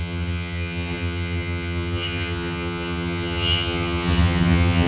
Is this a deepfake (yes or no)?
yes